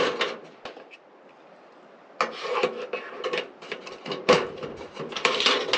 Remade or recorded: recorded